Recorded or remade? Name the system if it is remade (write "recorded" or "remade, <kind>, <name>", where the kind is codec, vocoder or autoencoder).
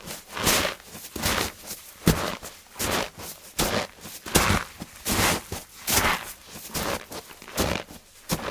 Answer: recorded